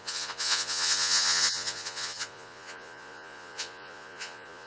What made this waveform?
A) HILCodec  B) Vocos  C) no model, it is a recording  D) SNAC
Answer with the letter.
B